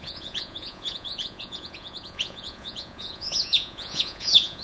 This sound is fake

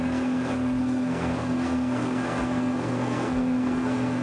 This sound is fake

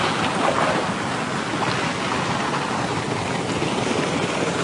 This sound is real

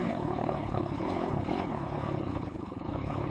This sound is fake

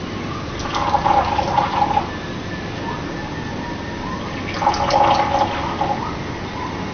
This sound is real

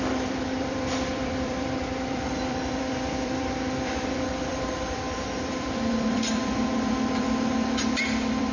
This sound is fake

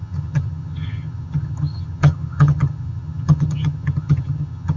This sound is fake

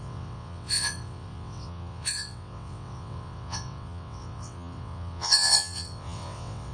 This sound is fake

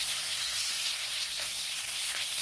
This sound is fake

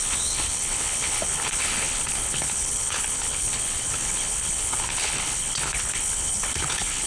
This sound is fake